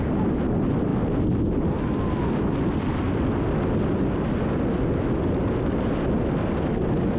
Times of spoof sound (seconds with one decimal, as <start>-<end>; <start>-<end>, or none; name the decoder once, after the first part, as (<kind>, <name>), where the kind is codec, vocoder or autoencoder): none